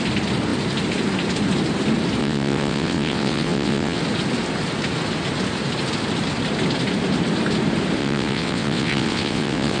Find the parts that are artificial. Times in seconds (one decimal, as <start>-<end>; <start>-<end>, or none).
2.2-4.0; 8.0-9.8